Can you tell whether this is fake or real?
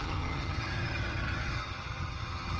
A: fake